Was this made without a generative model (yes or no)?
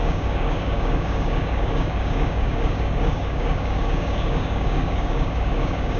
no